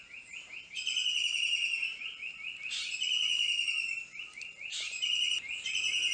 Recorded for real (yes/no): yes